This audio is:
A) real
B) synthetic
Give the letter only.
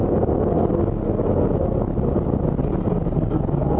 A